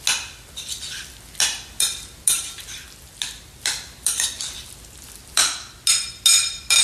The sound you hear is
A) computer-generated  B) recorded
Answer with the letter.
B